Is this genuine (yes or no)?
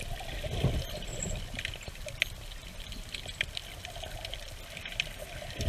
yes